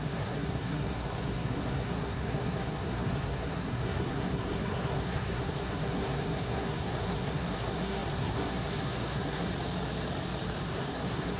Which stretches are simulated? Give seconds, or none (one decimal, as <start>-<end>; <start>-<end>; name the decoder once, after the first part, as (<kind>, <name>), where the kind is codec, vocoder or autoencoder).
0.0-9.5 (codec, SNAC); 10.6-11.4